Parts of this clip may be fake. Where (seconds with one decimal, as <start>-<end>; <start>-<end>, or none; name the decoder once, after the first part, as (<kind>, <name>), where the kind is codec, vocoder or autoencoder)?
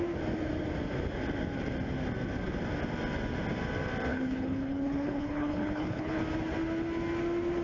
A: 4.1-6.2 (codec, HILCodec)